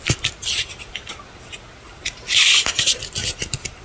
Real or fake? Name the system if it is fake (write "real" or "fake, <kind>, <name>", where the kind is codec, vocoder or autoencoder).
real